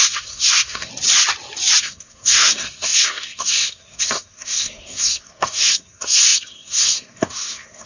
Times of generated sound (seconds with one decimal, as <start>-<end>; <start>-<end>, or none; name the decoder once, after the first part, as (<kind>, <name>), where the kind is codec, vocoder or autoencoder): 0.0-0.9 (codec, SNAC); 1.8-7.9